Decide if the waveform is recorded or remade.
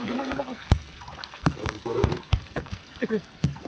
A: remade